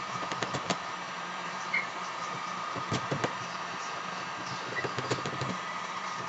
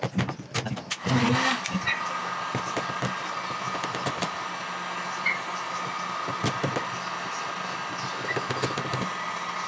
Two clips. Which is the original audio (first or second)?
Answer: second